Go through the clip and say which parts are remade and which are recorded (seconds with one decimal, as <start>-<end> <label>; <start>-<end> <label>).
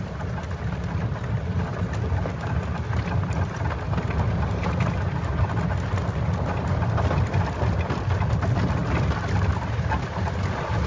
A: 0.0-10.9 recorded